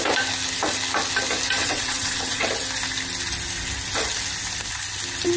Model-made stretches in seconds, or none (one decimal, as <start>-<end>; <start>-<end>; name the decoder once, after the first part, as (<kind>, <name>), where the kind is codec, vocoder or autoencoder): 1.6-2.5 (vocoder, WaveNeXt)